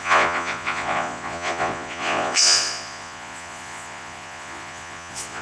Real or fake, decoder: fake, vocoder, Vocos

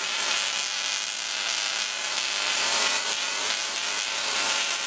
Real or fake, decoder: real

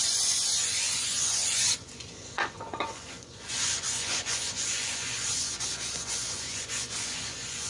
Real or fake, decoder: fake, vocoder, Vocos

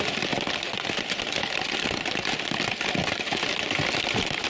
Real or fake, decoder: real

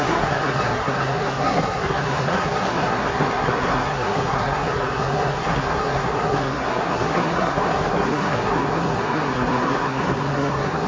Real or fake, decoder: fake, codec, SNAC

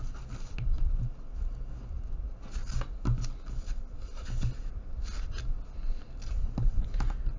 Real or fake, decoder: real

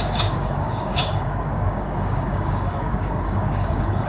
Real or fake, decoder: fake, codec, DAC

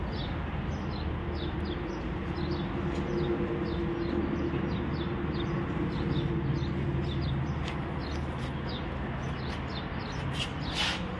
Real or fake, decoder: real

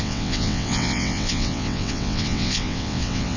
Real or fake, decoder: fake, vocoder, WaveNeXt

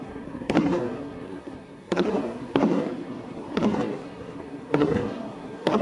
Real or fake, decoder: fake, codec, SNAC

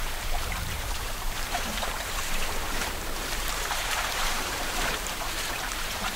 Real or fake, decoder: fake, vocoder, BigVGAN v2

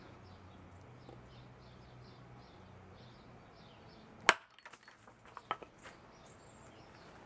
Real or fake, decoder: real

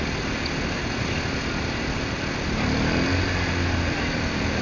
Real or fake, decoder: real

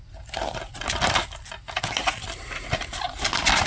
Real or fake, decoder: real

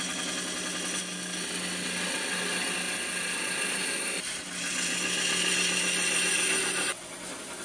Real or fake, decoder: real